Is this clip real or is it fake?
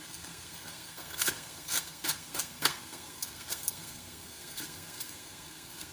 fake